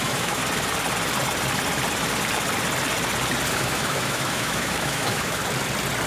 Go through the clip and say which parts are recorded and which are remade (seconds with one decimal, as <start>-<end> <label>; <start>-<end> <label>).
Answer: 0.0-0.4 remade; 0.4-3.5 recorded; 3.5-5.4 remade; 5.4-6.1 recorded